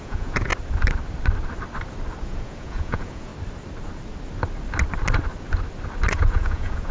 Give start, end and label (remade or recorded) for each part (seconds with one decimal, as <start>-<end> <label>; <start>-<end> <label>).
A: 0.0-0.5 remade; 0.5-2.2 recorded; 2.2-3.3 remade; 3.3-6.1 recorded; 6.1-6.9 remade